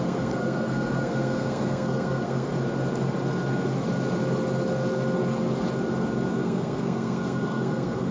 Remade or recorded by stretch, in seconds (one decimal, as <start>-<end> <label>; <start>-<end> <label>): 0.0-2.5 remade; 2.5-6.3 recorded; 6.3-8.1 remade